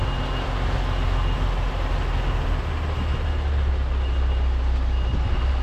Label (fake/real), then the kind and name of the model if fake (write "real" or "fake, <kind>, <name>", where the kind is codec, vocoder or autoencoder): real